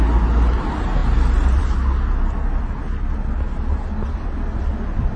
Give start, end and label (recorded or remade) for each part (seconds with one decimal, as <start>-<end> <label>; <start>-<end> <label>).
0.0-5.2 recorded